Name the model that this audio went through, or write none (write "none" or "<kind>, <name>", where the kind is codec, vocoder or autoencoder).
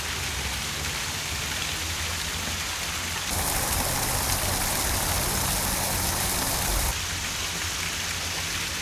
none